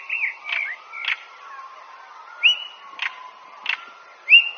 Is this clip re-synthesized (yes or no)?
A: no